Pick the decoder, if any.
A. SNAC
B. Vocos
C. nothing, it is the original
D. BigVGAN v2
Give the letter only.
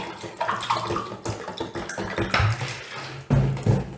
C